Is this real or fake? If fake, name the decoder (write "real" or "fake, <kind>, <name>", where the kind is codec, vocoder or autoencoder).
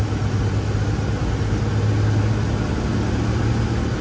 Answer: real